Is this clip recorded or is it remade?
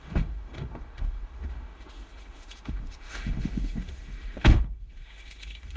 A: remade